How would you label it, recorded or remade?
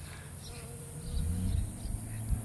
recorded